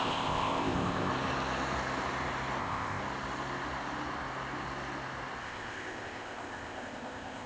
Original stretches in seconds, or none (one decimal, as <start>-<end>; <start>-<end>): 1.1-2.6; 3.0-5.4